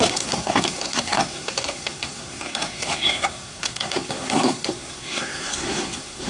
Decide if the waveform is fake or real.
fake